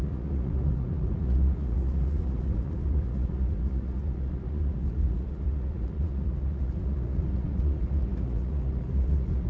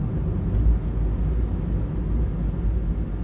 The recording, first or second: second